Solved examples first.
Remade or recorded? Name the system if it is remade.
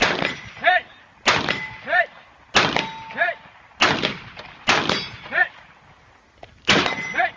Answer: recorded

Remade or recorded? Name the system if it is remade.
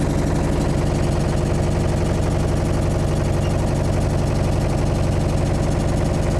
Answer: recorded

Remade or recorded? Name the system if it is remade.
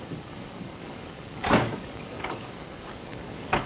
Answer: remade, codec, DAC